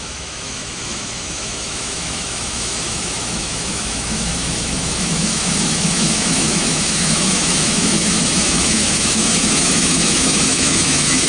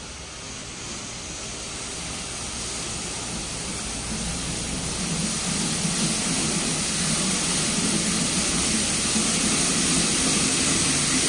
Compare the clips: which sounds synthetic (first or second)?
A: first